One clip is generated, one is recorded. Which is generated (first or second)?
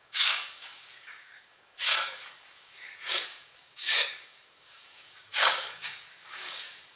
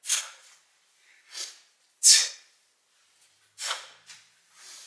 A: first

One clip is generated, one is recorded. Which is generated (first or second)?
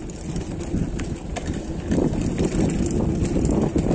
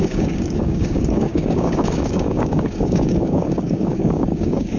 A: second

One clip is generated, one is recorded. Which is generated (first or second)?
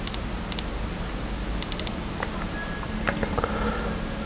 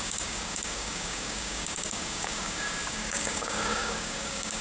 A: second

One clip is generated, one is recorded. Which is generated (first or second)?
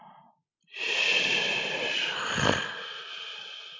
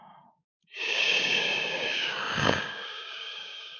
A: second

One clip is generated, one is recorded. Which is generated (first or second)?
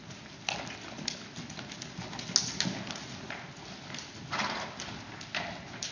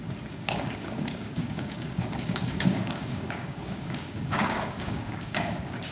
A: second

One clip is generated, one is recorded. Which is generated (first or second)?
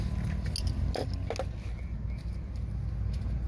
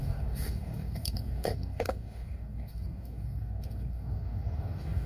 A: second